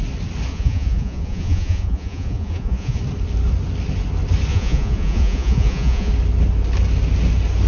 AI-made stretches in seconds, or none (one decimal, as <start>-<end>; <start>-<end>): 0.5-3.0; 4.5-6.1